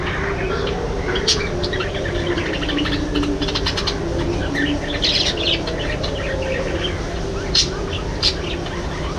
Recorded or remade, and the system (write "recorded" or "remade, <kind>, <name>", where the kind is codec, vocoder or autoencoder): recorded